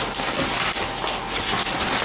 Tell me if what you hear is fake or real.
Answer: real